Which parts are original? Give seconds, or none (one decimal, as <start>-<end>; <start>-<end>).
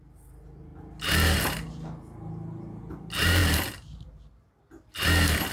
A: 0.0-5.5